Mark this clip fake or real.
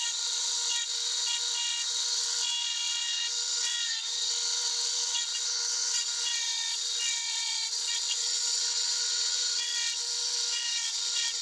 fake